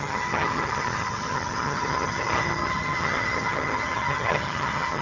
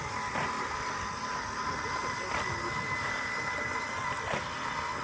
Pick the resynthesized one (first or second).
first